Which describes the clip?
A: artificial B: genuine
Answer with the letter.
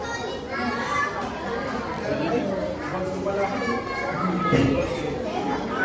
B